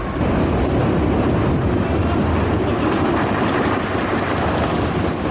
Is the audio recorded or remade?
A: recorded